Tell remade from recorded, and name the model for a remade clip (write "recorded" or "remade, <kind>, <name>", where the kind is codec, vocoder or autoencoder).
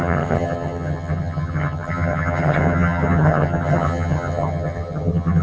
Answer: remade, vocoder, HiFi-GAN